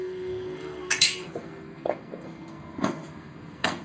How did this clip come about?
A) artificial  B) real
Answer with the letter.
A